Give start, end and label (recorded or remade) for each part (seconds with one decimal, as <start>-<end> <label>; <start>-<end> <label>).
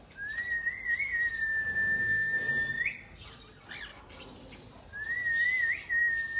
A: 0.0-2.0 recorded; 2.0-2.5 remade; 2.5-6.4 recorded